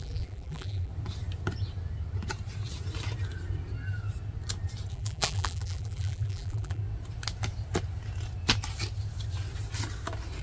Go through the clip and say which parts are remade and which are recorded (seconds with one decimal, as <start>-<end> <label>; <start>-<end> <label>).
0.0-0.9 remade; 0.9-4.9 recorded; 4.9-6.8 remade; 6.8-10.4 recorded